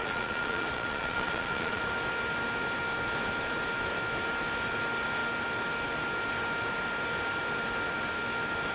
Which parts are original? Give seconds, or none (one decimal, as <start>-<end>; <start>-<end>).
1.8-8.7